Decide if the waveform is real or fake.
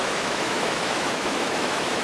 fake